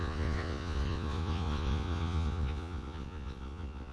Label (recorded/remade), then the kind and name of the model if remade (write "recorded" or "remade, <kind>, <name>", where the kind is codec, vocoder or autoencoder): remade, vocoder, Vocos